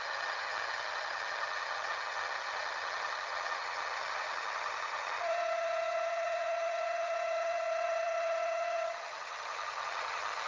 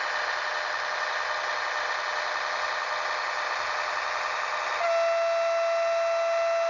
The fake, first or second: first